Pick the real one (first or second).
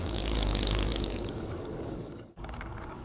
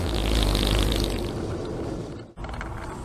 second